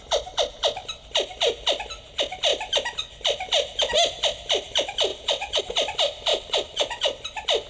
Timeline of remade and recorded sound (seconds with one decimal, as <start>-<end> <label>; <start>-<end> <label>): 0.0-5.1 recorded; 5.1-5.6 remade; 5.6-6.3 recorded; 6.3-7.2 remade; 7.2-7.7 recorded